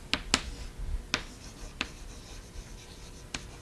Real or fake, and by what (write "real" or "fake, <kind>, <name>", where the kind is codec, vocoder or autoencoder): real